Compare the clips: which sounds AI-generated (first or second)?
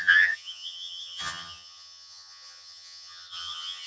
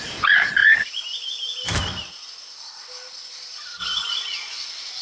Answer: first